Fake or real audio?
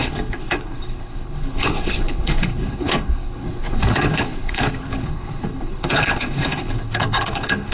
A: fake